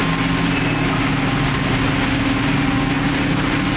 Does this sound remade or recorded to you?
recorded